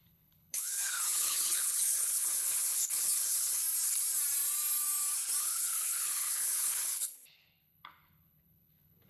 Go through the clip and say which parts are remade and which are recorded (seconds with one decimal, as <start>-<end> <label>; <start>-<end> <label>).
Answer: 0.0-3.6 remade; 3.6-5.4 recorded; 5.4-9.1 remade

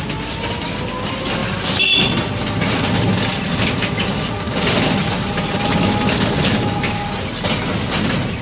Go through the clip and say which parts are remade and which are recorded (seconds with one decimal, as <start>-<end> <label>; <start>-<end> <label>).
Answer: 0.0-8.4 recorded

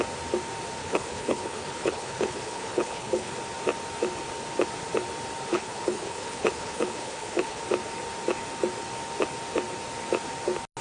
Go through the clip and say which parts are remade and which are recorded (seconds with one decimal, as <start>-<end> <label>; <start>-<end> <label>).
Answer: 0.0-0.8 recorded; 0.8-3.3 remade; 3.3-5.5 recorded; 5.5-7.6 remade; 7.6-10.8 recorded